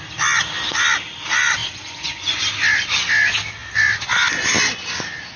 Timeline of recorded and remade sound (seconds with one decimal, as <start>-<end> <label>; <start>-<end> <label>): 0.0-1.6 recorded; 1.6-2.4 remade; 2.4-5.4 recorded